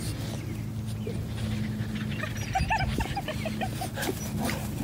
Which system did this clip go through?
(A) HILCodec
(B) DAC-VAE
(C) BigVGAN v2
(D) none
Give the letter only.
D